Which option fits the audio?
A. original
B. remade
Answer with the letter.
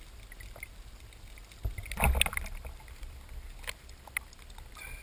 A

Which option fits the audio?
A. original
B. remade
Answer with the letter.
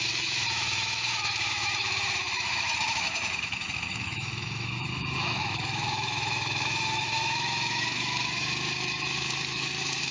B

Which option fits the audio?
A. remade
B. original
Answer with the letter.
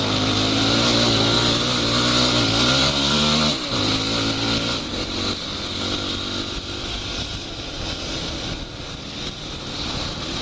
B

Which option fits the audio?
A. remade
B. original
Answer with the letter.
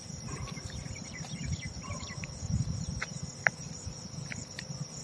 B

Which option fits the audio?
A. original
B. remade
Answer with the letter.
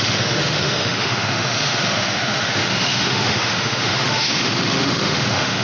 B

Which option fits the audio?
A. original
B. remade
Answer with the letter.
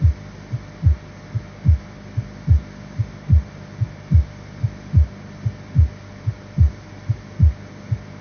A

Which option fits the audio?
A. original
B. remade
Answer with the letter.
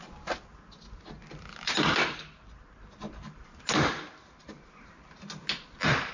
A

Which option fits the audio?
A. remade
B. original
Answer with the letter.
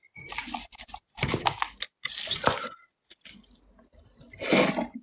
B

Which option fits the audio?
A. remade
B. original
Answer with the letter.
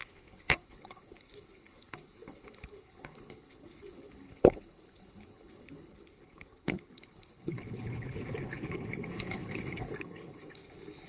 A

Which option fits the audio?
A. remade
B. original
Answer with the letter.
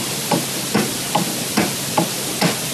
B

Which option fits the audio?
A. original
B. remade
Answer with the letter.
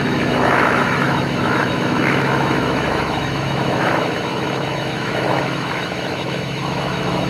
B